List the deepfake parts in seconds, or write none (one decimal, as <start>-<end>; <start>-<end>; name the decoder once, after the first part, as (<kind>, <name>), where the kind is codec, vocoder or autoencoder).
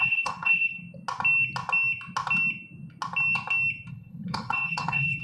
0.0-0.8 (codec, HILCodec); 3.9-5.2